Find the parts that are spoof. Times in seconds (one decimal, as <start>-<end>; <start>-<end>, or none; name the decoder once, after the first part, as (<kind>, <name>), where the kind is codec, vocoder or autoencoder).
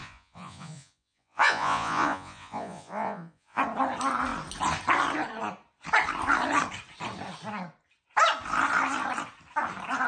0.0-3.6 (vocoder, Vocos)